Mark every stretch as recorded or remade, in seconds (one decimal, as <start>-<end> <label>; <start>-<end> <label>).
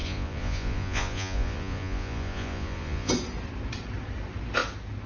0.0-3.1 remade; 3.1-5.1 recorded